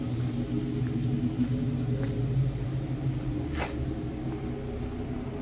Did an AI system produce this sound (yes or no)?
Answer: no